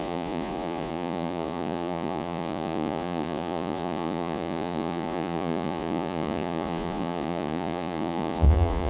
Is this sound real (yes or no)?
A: no